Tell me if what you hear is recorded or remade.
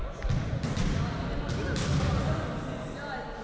recorded